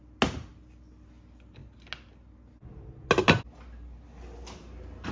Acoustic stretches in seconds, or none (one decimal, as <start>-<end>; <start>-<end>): 0.0-5.1